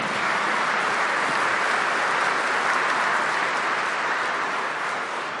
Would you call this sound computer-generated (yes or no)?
no